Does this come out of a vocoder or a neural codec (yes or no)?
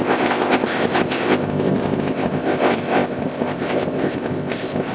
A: yes